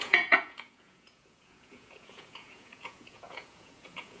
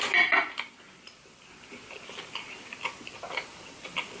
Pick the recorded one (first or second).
second